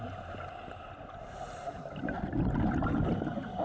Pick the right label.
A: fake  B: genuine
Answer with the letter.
B